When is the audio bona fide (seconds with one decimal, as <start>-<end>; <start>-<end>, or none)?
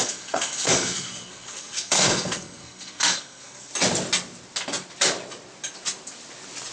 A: 3.7-6.7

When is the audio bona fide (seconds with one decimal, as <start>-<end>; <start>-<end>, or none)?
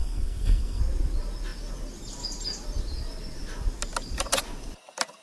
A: 0.8-5.2